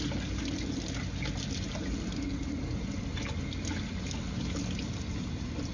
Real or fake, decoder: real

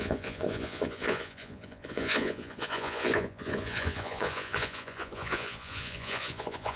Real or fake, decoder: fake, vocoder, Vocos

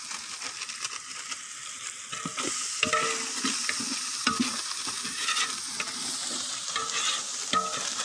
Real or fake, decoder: real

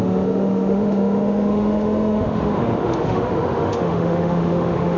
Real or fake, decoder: fake, autoencoder, DAC-VAE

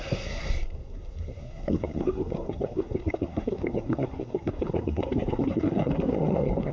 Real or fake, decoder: fake, codec, SNAC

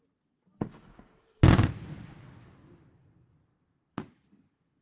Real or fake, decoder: real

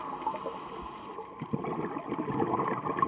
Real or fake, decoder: real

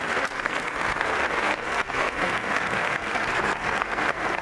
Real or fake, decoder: fake, codec, SNAC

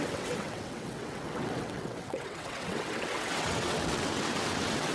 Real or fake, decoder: fake, vocoder, WaveNeXt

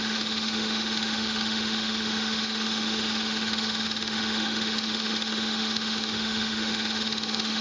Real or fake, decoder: fake, autoencoder, DAC-VAE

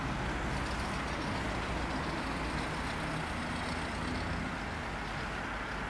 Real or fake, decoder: real